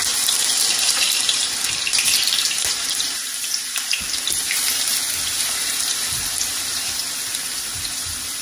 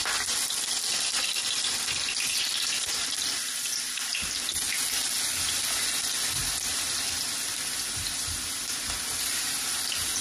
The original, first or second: second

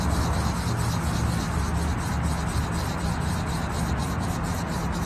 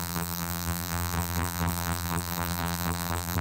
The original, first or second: first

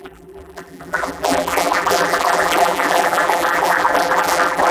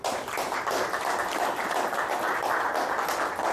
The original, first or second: second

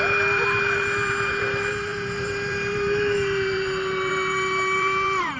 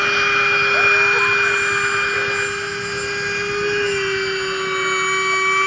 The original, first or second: second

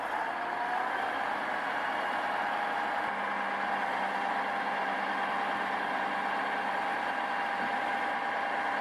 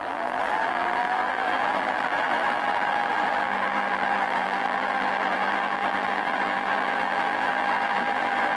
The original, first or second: first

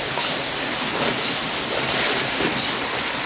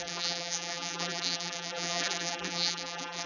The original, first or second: first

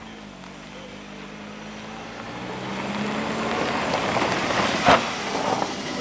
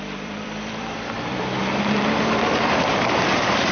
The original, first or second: first